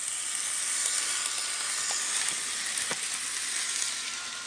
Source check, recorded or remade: recorded